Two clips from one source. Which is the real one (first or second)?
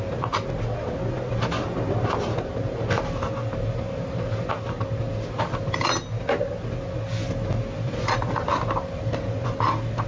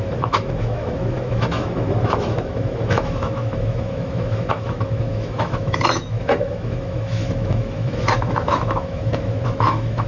first